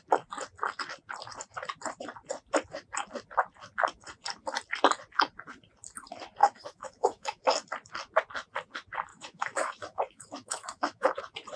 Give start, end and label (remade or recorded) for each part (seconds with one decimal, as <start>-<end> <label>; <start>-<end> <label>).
0.0-6.4 recorded; 6.4-7.4 remade; 7.4-9.1 recorded; 9.1-11.2 remade; 11.2-11.6 recorded